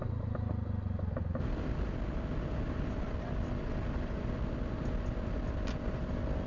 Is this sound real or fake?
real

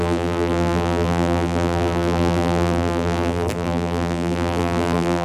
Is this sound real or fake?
fake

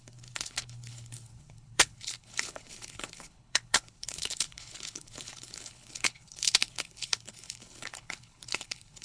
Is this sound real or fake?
fake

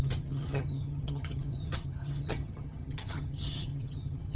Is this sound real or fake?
fake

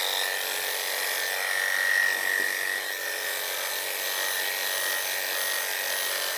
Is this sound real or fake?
real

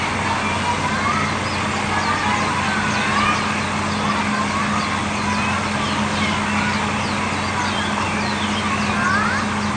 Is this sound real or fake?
real